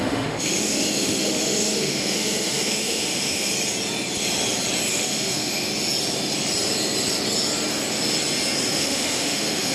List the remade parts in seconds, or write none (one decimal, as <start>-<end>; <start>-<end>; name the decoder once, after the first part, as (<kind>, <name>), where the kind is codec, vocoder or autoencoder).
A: 0.0-3.5 (autoencoder, DAC-VAE); 4.9-5.7; 8.7-9.7